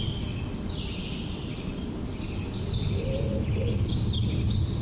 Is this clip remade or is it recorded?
recorded